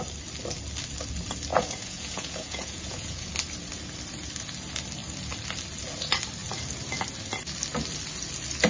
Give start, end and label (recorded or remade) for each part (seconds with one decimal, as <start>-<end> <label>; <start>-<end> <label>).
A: 0.0-1.5 recorded; 1.5-3.3 remade; 3.3-8.7 recorded